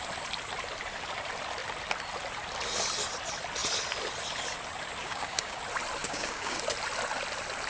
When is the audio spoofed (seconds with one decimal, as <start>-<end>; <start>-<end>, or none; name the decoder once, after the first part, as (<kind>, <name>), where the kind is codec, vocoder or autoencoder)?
5.0-5.6 (codec, DAC); 6.0-6.6